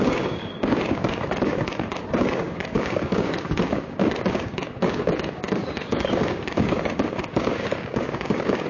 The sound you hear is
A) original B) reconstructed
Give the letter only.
B